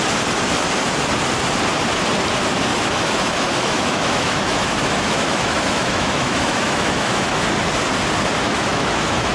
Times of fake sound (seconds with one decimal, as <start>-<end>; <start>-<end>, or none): 2.7-7.4; 8.4-9.3